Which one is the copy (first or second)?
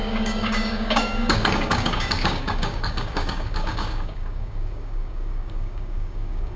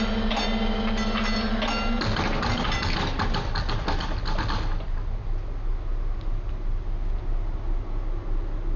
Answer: first